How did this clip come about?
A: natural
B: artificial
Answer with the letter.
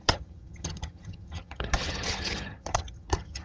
B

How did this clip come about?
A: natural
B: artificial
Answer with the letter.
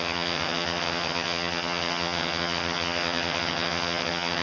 B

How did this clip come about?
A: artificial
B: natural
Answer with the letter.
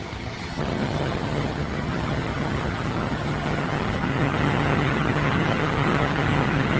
A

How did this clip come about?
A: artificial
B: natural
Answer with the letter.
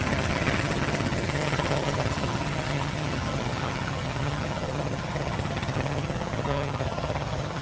A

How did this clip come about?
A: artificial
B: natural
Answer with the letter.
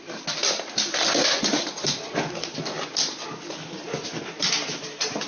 B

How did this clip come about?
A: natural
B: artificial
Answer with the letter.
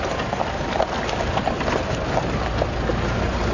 A